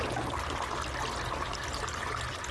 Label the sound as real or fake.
real